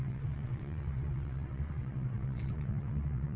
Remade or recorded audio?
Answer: remade